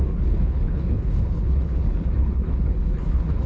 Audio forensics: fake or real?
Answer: fake